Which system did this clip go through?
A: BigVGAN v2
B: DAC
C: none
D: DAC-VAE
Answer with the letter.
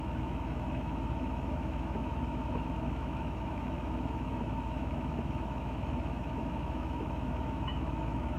D